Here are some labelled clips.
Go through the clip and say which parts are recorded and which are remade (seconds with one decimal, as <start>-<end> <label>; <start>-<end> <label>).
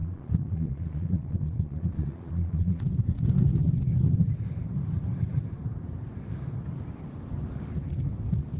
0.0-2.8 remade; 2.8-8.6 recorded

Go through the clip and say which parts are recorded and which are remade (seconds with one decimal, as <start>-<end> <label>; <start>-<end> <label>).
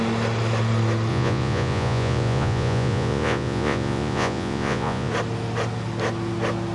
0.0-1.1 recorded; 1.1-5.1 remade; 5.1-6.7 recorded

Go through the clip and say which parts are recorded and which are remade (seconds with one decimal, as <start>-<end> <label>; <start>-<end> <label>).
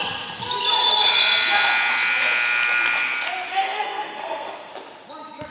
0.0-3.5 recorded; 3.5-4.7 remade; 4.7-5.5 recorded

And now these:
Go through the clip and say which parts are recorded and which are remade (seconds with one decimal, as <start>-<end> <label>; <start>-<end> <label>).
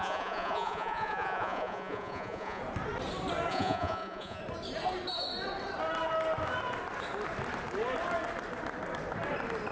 0.0-2.6 remade; 2.6-3.5 recorded; 3.5-4.4 remade; 4.4-9.7 recorded